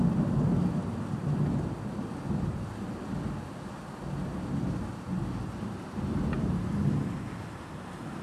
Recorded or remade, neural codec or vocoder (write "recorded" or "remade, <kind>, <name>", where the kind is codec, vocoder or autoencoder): recorded